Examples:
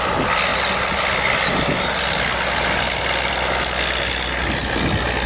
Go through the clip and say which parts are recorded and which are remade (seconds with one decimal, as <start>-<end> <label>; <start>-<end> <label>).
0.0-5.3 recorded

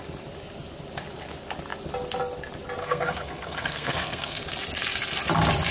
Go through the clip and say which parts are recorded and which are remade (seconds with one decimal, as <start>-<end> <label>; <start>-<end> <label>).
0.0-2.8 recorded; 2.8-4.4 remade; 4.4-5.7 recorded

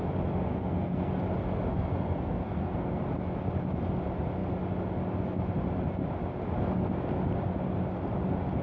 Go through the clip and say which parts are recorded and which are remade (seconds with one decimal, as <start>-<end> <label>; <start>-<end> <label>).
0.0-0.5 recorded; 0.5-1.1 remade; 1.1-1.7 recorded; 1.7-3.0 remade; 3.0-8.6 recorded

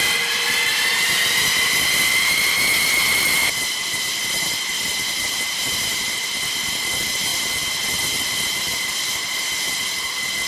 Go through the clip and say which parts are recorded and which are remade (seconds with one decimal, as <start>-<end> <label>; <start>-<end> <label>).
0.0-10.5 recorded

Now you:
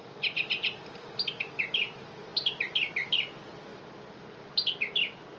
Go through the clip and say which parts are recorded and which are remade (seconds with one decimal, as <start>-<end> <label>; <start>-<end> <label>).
0.0-5.4 recorded

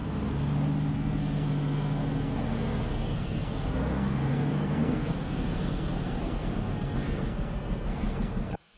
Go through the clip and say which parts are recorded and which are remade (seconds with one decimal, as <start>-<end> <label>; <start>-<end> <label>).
0.0-0.9 recorded; 0.9-8.8 remade

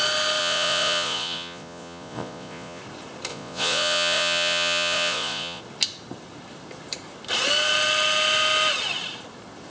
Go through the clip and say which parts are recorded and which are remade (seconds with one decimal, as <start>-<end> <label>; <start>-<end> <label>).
0.0-0.4 recorded; 0.4-2.8 remade; 2.8-3.3 recorded; 3.3-5.6 remade; 5.6-9.7 recorded